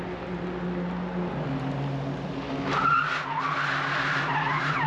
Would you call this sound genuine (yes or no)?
yes